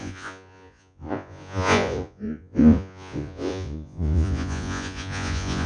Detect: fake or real fake